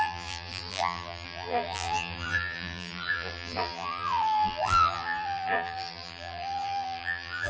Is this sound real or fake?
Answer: fake